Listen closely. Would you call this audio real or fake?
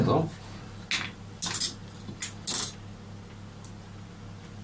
real